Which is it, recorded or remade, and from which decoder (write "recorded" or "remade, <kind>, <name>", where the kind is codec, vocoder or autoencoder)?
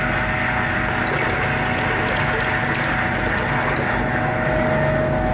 recorded